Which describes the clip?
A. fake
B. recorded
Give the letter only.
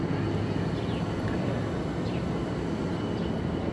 B